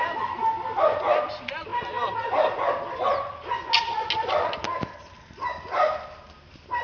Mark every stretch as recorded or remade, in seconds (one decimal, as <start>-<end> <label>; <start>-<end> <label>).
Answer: 0.0-6.8 recorded